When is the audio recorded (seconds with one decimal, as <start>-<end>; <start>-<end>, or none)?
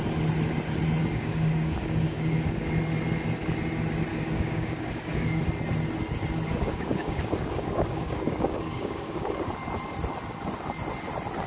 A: 0.0-1.0; 2.7-4.1; 5.4-6.5; 9.5-11.5